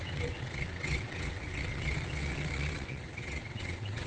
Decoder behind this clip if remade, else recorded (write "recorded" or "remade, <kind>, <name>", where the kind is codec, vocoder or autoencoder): remade, vocoder, WaveNeXt